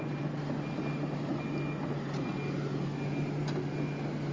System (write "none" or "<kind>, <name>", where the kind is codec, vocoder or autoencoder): none